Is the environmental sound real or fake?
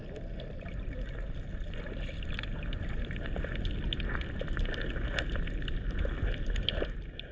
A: real